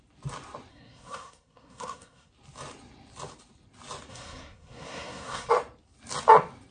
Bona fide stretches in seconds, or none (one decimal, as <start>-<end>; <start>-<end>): 0.0-0.7; 2.3-4.1; 5.5-6.7